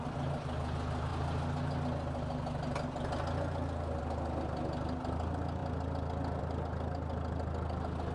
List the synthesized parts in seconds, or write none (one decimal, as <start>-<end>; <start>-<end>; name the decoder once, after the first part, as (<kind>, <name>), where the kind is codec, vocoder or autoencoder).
none